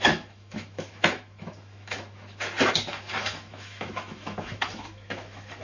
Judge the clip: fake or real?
fake